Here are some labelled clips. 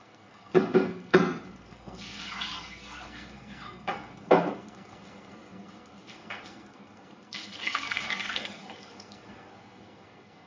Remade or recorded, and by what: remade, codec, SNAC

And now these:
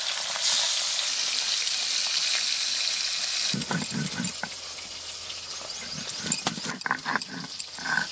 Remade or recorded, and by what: recorded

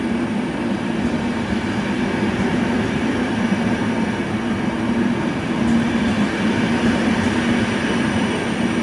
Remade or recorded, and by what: recorded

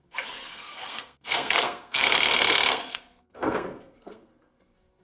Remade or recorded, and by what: remade, codec, SNAC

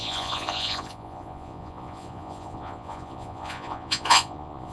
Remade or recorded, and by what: remade, vocoder, Vocos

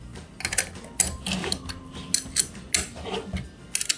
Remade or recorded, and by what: recorded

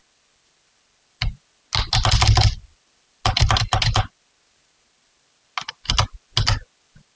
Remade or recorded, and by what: recorded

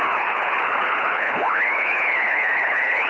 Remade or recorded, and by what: remade, codec, HILCodec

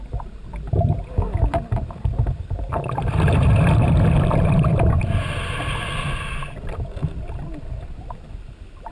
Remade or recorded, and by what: recorded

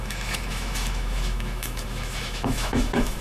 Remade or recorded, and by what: remade, autoencoder, DAC-VAE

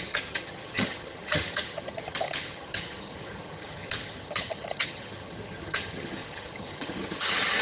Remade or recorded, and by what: remade, vocoder, HiFi-GAN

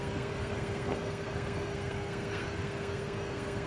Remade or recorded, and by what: remade, codec, SNAC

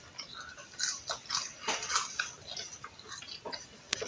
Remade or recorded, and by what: recorded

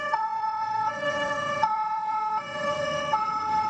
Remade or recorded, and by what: remade, vocoder, WaveNeXt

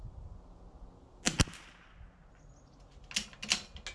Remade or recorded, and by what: recorded